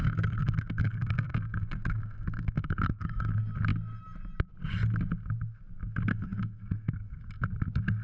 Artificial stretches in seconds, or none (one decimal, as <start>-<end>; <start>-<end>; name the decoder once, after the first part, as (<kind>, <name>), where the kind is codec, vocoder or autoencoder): 0.0-3.3 (codec, SNAC); 6.1-7.2